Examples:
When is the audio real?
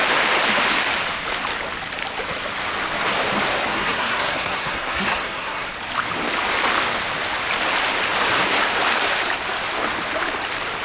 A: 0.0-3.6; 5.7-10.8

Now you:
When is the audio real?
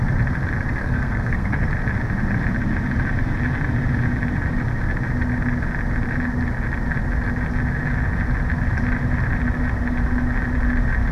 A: 0.0-0.8; 1.7-11.1